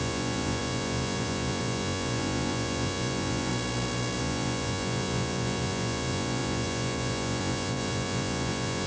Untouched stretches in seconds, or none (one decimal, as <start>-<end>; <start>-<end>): 3.5-4.2